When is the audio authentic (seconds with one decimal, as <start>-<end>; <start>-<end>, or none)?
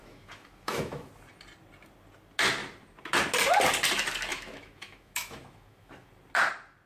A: 1.1-4.3; 6.1-6.9